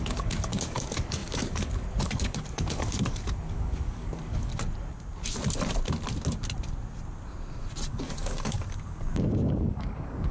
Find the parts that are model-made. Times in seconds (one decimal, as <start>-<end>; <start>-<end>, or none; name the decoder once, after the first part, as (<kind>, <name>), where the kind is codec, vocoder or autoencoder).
0.0-4.5 (codec, DAC); 7.9-10.3